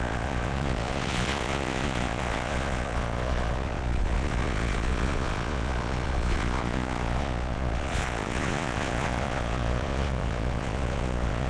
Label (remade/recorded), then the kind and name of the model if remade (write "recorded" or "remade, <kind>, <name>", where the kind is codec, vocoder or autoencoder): remade, vocoder, Vocos